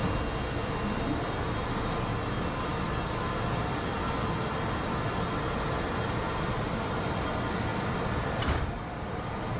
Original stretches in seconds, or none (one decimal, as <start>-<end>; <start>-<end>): 0.0-7.7; 9.2-9.6